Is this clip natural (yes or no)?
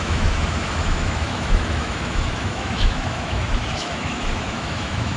no